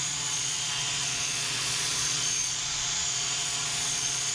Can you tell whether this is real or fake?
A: fake